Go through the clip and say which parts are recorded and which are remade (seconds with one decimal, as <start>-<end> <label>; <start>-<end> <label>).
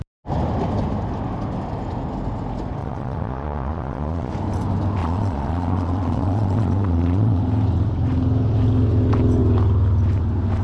0.0-2.8 recorded; 2.8-4.3 remade; 4.3-5.0 recorded; 5.0-7.4 remade; 7.4-10.6 recorded